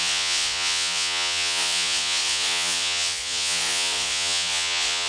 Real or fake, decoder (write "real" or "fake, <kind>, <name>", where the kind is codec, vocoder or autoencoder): fake, vocoder, Vocos